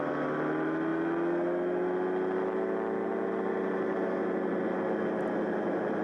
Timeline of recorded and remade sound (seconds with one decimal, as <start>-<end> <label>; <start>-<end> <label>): 0.0-6.0 recorded